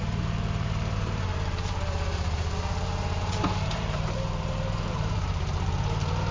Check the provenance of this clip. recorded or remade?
remade